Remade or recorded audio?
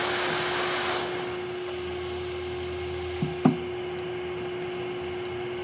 recorded